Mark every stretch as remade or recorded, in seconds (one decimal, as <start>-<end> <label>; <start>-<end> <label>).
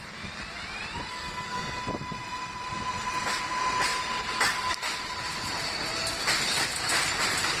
0.0-1.1 recorded; 1.1-1.8 remade; 1.8-7.6 recorded